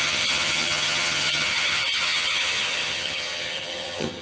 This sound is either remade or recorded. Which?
remade